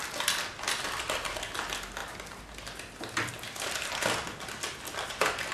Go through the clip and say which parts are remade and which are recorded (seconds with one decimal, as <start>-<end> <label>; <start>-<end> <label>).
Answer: 0.0-5.5 recorded